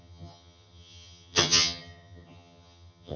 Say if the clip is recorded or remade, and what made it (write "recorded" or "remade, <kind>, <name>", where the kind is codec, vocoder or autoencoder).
remade, vocoder, HiFi-GAN